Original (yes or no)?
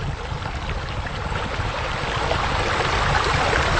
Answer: yes